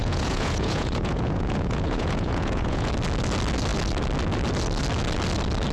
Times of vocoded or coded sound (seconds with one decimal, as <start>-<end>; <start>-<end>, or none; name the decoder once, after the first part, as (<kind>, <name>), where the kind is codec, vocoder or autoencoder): 0.0-2.9 (vocoder, Vocos)